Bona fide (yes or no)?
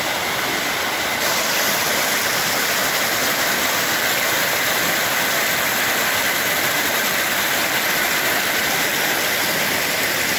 yes